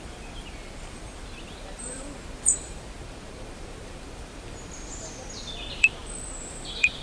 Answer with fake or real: fake